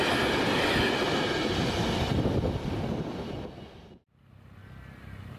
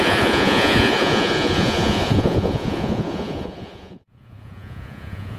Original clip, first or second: first